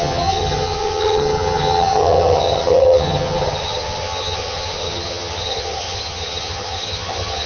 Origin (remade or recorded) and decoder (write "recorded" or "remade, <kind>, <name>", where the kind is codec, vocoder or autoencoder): remade, vocoder, HiFi-GAN